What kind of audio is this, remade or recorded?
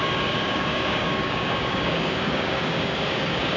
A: remade